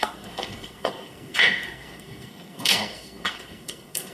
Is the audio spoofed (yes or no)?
yes